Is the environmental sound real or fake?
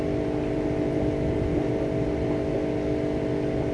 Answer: real